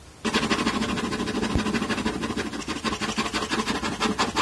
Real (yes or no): yes